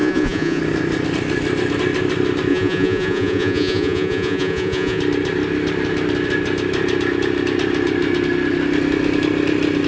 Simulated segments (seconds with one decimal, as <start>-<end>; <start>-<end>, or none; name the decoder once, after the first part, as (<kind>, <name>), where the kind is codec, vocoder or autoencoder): 0.0-0.6 (vocoder, Vocos); 2.5-5.0